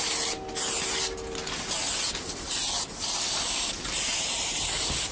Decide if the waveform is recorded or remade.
recorded